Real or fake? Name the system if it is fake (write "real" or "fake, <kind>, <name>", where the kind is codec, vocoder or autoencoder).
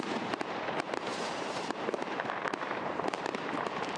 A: fake, vocoder, BigVGAN v2